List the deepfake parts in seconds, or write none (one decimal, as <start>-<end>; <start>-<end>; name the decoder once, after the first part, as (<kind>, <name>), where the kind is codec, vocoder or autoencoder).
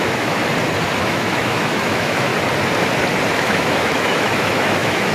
0.0-0.4 (autoencoder, DAC-VAE); 1.0-2.3; 3.3-5.1